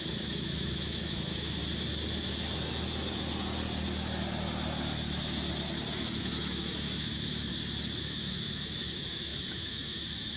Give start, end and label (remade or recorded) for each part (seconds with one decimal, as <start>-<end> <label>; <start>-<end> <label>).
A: 0.0-1.6 remade; 1.6-6.2 recorded; 6.2-7.5 remade; 7.5-8.0 recorded; 8.0-10.4 remade

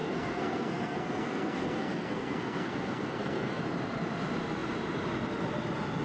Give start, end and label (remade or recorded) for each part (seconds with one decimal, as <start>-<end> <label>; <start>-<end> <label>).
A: 0.0-3.6 remade; 3.6-6.0 recorded

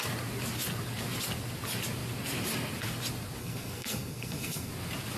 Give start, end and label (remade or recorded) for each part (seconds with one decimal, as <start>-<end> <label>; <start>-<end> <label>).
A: 0.0-3.4 recorded; 3.4-4.7 remade; 4.7-5.2 recorded

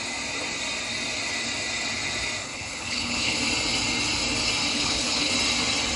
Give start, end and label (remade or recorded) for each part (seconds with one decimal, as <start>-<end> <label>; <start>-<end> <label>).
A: 0.0-2.4 recorded; 2.4-3.4 remade; 3.4-4.7 recorded; 4.7-5.3 remade; 5.3-6.0 recorded

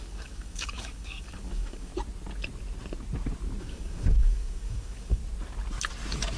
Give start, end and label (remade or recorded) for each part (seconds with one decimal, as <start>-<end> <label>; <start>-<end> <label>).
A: 0.0-1.9 remade; 1.9-3.6 recorded; 3.6-5.2 remade; 5.2-6.4 recorded